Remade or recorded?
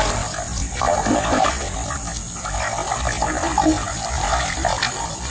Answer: recorded